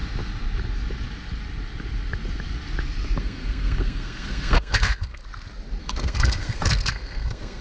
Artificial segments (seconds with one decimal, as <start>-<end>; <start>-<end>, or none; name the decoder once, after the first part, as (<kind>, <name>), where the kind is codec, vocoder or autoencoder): 3.2-5.2 (codec, SNAC); 5.8-7.6